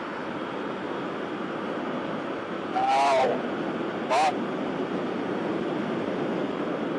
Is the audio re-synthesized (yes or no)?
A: no